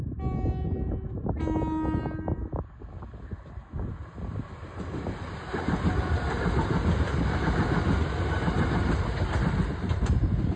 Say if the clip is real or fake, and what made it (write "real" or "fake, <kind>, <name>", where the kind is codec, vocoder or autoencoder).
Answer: real